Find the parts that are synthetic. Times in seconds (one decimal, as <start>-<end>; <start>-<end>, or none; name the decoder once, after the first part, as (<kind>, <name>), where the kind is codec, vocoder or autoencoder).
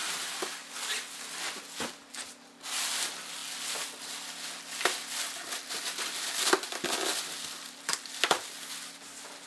none